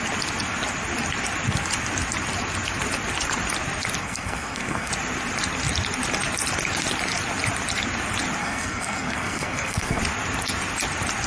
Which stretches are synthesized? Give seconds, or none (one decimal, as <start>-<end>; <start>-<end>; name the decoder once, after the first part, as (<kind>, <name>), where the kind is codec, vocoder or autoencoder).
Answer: 4.0-4.9 (codec, SNAC); 8.4-10.0